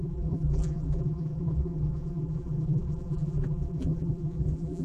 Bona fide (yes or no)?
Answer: no